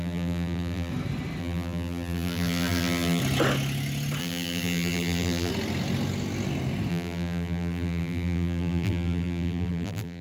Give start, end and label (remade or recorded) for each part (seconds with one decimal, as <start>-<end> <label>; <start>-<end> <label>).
0.0-0.9 remade; 0.9-1.4 recorded; 1.4-3.2 remade; 3.2-4.2 recorded; 4.2-5.5 remade; 5.5-6.9 recorded; 6.9-10.2 remade